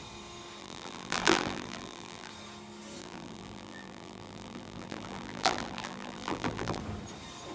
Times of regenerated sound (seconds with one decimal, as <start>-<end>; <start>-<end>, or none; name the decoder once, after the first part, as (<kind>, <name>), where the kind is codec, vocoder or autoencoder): 0.6-2.3 (vocoder, BigVGAN v2); 3.0-6.8